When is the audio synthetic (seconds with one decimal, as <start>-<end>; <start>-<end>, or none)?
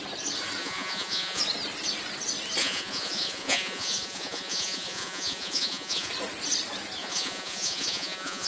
0.6-1.4; 2.6-6.1; 7.0-8.5